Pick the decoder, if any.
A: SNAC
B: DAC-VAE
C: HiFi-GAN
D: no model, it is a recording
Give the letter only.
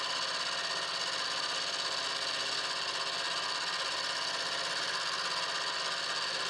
D